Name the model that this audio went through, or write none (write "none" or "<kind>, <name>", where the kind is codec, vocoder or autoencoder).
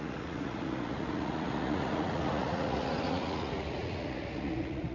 vocoder, Vocos